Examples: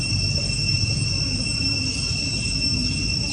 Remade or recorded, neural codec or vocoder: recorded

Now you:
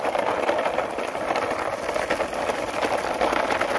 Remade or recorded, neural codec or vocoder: recorded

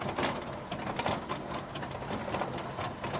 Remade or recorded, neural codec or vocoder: recorded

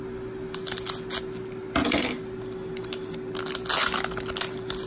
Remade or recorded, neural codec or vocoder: recorded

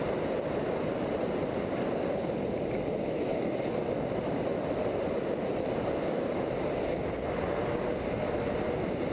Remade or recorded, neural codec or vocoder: recorded